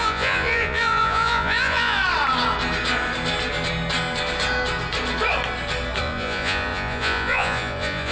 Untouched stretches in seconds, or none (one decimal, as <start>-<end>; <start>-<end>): 2.0-6.0